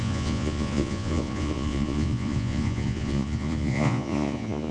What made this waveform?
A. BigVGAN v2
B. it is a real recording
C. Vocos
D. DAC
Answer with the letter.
C